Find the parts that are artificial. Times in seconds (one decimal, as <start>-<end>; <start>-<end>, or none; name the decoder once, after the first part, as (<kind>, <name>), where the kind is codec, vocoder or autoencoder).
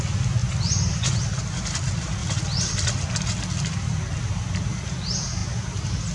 0.4-1.2 (vocoder, Vocos)